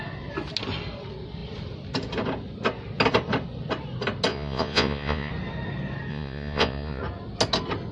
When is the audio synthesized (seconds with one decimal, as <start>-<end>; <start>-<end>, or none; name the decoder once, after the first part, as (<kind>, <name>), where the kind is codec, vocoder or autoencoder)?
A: 4.3-5.3 (vocoder, Vocos); 6.1-7.0